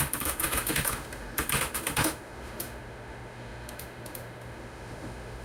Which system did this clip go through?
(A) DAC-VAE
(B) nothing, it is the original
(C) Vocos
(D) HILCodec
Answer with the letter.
A